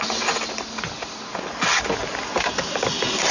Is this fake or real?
real